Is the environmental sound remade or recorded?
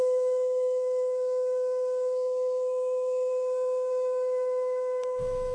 remade